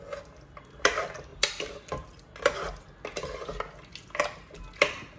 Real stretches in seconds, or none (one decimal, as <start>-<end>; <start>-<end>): 0.0-1.3; 2.2-5.2